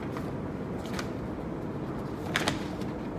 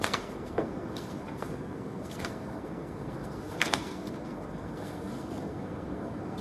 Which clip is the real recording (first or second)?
first